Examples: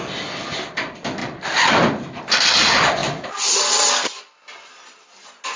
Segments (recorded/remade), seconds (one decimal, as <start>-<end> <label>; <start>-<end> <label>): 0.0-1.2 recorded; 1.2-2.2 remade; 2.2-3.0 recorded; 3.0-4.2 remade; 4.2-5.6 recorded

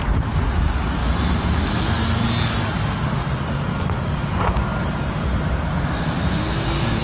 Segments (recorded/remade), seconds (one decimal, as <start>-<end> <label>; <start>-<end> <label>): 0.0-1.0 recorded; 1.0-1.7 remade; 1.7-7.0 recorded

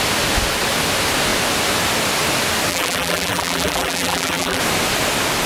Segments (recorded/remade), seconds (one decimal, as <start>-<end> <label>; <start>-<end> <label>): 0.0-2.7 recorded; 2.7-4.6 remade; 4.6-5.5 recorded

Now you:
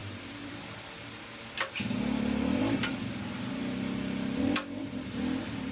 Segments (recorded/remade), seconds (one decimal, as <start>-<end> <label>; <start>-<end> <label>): 0.0-0.6 remade; 0.6-5.7 recorded